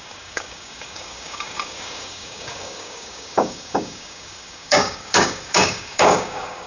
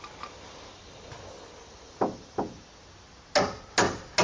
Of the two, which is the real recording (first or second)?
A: second